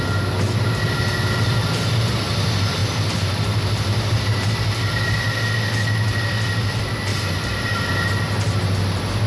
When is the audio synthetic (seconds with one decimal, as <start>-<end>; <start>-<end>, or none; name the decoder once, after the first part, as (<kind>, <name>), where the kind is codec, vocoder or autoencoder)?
2.8-4.5 (vocoder, BigVGAN v2); 7.1-7.9